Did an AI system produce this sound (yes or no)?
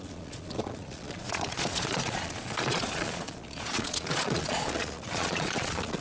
yes